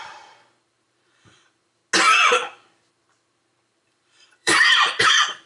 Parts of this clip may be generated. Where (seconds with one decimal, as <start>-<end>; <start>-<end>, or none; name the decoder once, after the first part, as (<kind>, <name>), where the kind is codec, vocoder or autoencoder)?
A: 0.0-1.8 (vocoder, BigVGAN v2); 2.9-5.5